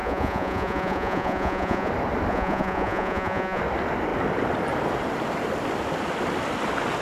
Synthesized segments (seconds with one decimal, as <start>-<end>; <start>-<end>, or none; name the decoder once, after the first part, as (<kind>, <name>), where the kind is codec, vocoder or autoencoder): 0.0-1.9 (vocoder, Vocos); 2.3-3.6